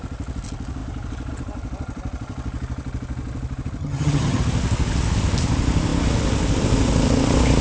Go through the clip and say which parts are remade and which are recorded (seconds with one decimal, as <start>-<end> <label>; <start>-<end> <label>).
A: 0.0-3.8 recorded; 3.8-4.4 remade; 4.4-7.6 recorded